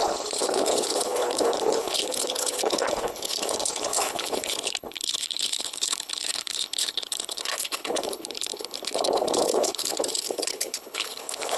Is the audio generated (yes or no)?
yes